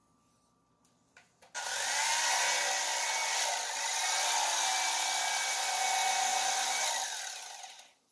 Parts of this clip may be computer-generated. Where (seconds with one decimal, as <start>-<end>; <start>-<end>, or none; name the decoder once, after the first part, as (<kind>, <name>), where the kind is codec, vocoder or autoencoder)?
none